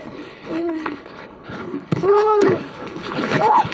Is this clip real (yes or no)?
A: no